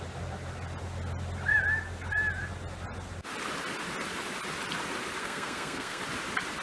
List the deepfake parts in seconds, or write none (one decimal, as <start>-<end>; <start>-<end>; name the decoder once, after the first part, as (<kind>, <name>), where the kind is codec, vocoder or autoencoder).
5.2-6.0 (codec, SNAC)